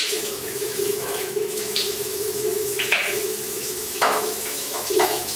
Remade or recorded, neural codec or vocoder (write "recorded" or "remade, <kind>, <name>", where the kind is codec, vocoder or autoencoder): remade, autoencoder, DAC-VAE